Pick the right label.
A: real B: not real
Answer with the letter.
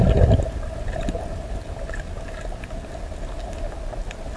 A